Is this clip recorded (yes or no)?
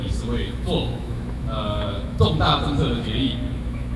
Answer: no